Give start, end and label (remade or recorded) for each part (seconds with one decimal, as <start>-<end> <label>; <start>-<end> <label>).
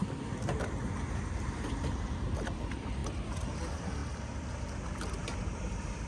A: 0.0-0.8 recorded; 0.8-4.0 remade; 4.0-5.4 recorded; 5.4-6.1 remade